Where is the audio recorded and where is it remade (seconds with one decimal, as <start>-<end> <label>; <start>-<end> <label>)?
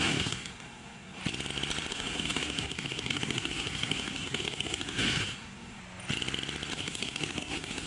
0.0-1.2 remade; 1.2-1.9 recorded; 1.9-5.8 remade; 5.8-6.7 recorded; 6.7-7.9 remade